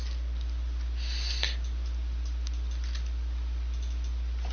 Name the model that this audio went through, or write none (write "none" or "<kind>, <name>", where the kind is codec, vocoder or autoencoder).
none